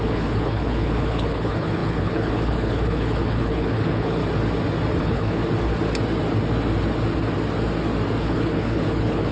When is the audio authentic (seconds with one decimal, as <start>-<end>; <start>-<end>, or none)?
4.2-5.0; 5.4-8.2